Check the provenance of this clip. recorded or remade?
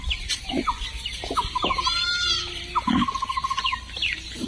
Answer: recorded